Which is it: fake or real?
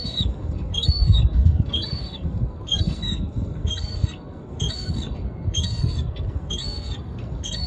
fake